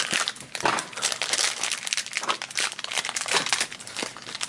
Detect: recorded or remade recorded